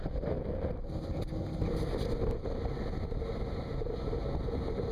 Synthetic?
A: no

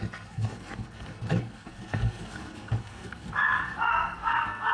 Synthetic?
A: yes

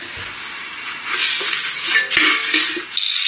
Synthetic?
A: no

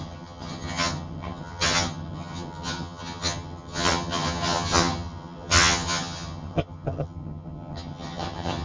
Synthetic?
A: yes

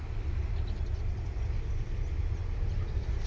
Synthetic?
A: no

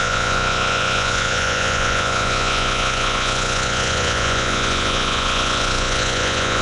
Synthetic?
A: yes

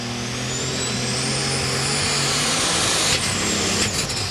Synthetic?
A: no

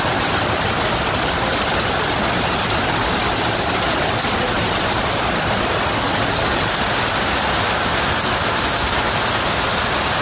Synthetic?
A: no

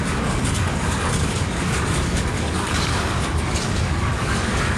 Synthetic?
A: yes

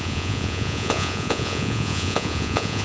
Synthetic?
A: yes